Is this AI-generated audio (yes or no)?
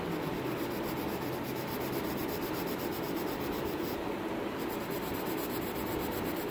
no